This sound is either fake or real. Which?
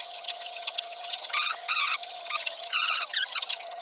fake